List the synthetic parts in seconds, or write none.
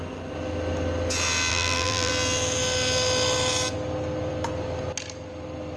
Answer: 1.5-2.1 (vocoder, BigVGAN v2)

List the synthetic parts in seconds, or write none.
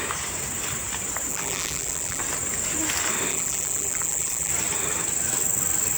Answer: 1.3-2.2 (vocoder, BigVGAN v2); 3.3-4.5